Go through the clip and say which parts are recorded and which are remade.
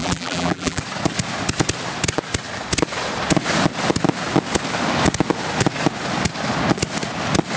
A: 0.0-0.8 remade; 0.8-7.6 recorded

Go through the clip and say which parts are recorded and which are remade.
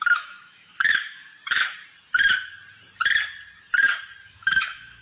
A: 0.0-1.3 remade; 1.3-4.3 recorded; 4.3-5.0 remade